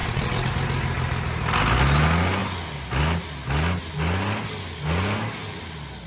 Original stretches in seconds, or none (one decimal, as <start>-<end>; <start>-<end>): 0.5-6.1